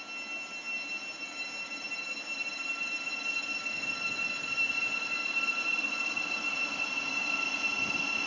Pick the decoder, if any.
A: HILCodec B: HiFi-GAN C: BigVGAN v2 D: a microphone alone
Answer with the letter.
D